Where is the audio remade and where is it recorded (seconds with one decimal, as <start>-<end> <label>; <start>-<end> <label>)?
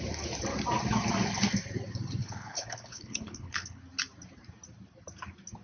0.0-2.2 recorded; 2.2-3.8 remade; 3.8-5.6 recorded